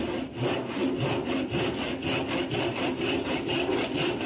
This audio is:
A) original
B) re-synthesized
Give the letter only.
A